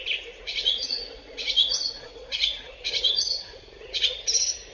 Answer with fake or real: fake